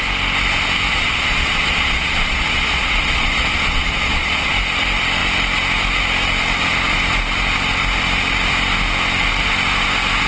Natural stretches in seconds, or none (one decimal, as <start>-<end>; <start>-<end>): 0.0-0.9; 4.5-10.3